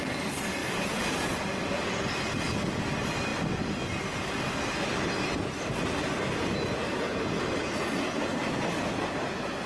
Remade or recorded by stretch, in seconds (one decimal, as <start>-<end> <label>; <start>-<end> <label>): 0.0-0.6 recorded; 0.6-1.9 remade; 1.9-9.7 recorded